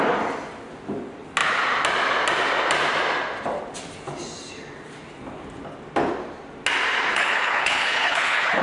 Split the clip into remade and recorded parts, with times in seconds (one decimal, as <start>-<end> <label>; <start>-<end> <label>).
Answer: 0.0-7.1 recorded; 7.1-8.6 remade